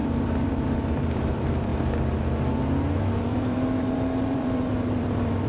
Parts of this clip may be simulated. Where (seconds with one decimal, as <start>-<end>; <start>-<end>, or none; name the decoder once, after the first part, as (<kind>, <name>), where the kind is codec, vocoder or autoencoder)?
0.0-1.7 (vocoder, BigVGAN v2); 3.0-5.5